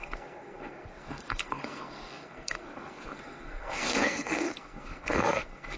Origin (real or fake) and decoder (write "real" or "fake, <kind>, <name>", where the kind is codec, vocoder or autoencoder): fake, codec, SNAC